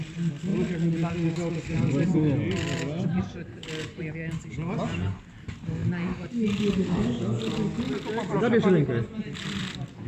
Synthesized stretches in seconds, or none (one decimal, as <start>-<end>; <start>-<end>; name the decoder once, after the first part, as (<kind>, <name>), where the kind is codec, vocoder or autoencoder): none